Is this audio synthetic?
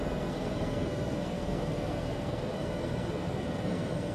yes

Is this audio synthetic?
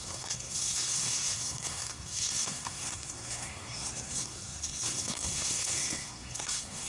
yes